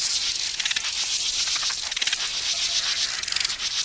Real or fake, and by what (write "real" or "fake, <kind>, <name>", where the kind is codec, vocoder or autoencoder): real